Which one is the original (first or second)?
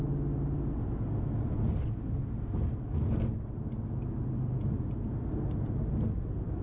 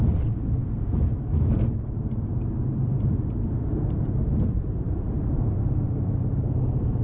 first